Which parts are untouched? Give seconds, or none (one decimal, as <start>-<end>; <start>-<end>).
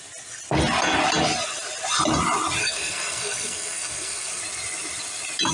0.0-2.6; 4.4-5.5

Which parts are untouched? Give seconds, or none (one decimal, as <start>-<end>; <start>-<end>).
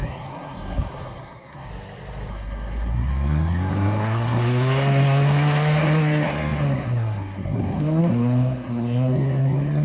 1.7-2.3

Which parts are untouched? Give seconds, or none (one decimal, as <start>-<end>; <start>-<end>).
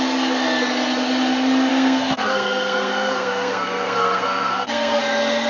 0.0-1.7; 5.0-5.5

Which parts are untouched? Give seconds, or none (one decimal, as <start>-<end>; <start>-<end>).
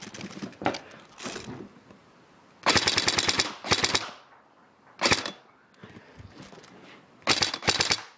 0.0-8.2